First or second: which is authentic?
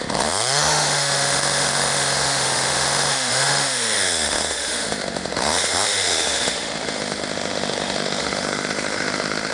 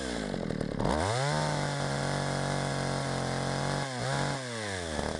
second